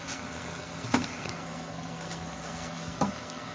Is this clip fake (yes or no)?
yes